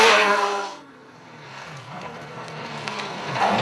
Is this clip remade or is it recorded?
remade